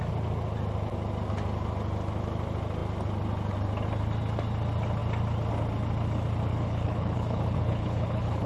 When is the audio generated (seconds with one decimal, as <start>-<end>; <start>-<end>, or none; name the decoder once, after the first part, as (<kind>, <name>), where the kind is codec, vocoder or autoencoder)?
6.5-8.5 (codec, HILCodec)